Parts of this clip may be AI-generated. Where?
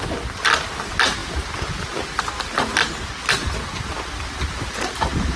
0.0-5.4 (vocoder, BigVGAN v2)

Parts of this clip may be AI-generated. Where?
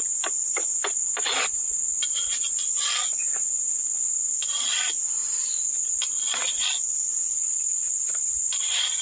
none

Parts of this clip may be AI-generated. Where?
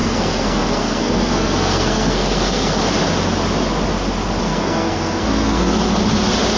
0.0-2.8 (codec, SNAC); 4.4-5.8